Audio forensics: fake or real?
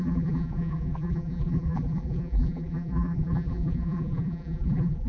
fake